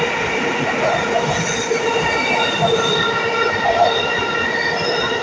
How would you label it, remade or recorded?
recorded